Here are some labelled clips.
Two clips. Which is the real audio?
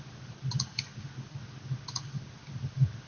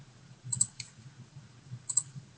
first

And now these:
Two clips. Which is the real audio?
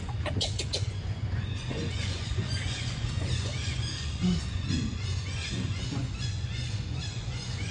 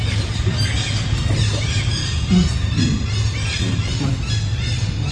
second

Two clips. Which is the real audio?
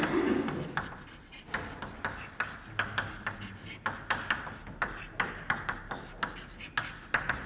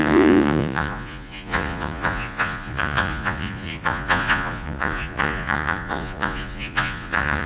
first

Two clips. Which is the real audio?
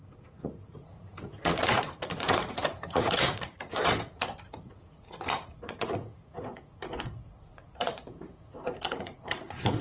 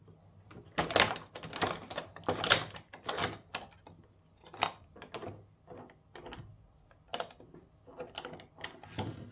second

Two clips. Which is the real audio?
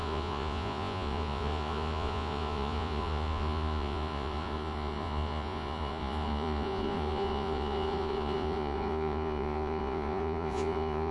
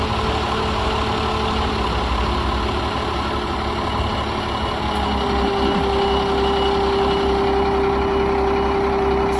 second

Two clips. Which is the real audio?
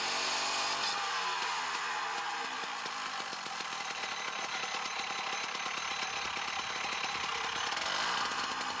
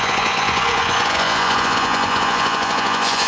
first